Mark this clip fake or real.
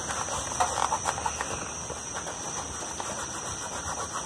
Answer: real